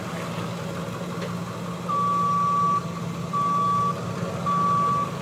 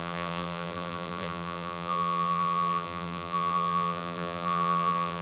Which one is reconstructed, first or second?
second